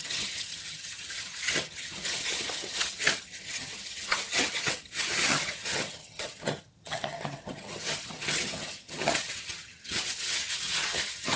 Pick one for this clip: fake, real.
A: fake